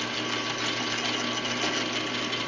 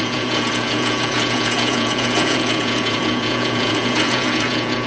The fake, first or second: second